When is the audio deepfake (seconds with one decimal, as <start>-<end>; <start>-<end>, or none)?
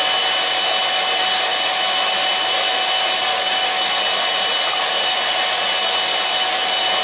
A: 3.3-3.8